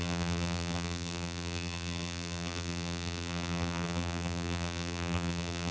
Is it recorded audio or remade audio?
remade